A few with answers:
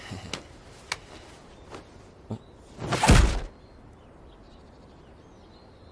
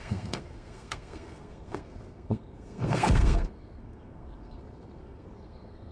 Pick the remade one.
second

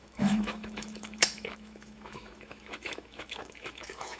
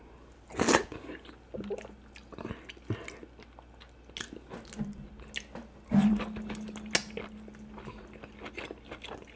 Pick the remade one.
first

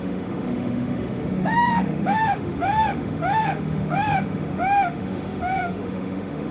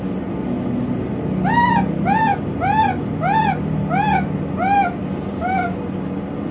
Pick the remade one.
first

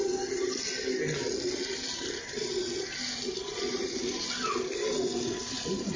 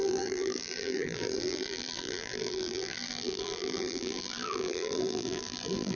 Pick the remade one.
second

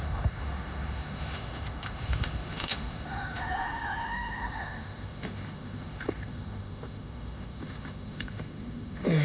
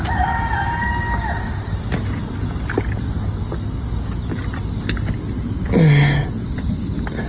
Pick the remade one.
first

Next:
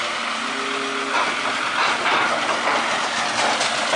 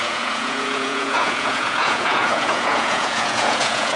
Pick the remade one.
second